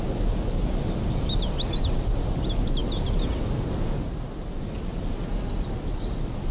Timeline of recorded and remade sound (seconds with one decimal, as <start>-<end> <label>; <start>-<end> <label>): 0.0-6.5 recorded